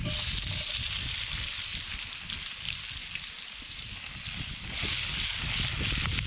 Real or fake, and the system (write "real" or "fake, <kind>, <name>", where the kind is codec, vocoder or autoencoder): real